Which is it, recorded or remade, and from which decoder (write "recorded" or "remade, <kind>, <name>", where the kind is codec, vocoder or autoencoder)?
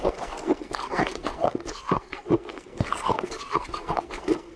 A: remade, codec, SNAC